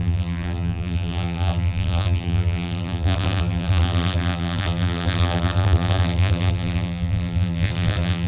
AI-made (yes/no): yes